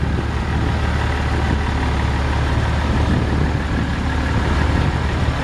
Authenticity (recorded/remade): recorded